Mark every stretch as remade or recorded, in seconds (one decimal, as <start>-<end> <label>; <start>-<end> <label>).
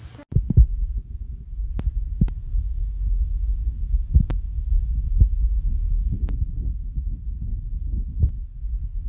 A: 0.0-2.4 recorded; 2.4-6.2 remade; 6.2-7.5 recorded; 7.5-8.3 remade; 8.3-9.1 recorded